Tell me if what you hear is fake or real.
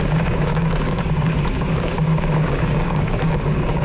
fake